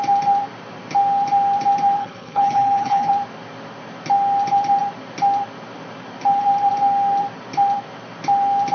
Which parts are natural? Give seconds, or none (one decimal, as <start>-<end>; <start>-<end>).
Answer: 0.0-2.0; 3.1-8.7